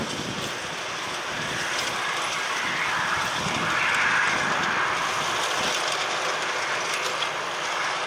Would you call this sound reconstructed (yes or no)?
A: no